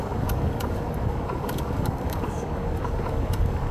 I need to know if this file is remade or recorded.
remade